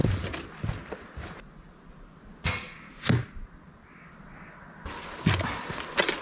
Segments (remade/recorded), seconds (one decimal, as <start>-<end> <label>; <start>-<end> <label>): 0.0-6.2 recorded